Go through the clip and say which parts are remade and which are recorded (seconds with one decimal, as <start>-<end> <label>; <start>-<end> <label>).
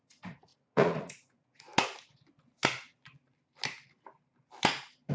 0.0-1.7 remade; 1.7-5.1 recorded